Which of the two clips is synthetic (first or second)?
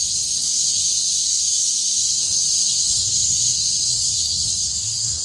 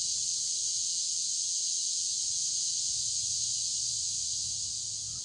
first